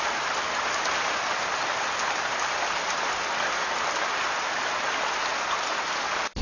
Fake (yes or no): no